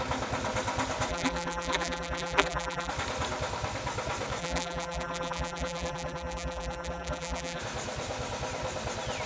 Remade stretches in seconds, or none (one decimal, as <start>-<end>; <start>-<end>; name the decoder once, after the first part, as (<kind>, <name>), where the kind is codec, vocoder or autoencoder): 1.1-2.9 (vocoder, BigVGAN v2); 4.4-7.6

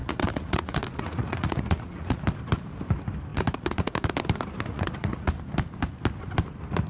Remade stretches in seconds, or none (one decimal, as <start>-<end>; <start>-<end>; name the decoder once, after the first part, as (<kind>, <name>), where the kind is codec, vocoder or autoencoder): 0.0-2.2 (vocoder, Vocos); 3.3-4.1; 4.7-5.3

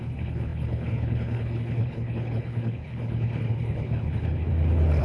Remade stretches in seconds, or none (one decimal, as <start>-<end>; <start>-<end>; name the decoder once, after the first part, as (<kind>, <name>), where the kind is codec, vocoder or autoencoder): 0.0-4.5 (codec, HILCodec)

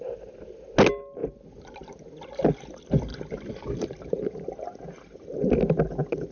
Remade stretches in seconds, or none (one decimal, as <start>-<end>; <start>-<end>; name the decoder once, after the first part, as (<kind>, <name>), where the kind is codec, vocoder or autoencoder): none

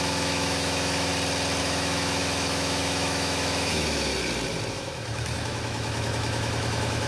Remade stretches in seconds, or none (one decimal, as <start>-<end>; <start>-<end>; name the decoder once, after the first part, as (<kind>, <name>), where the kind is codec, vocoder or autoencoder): 0.0-1.1 (autoencoder, DAC-VAE); 1.6-4.1; 4.7-7.1

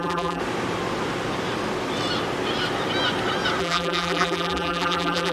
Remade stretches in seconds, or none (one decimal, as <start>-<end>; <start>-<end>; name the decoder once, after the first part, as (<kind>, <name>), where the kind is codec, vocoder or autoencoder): 0.0-0.4 (vocoder, BigVGAN v2); 3.6-5.3

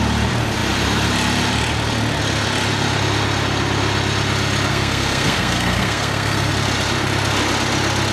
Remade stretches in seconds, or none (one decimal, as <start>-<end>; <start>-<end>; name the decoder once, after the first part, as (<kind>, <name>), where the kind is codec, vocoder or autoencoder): 4.7-6.5 (codec, SNAC)

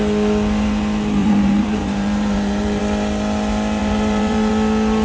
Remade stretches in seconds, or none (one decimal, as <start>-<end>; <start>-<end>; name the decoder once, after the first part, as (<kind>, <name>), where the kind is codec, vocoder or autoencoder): 1.2-2.8 (vocoder, BigVGAN v2); 3.8-4.5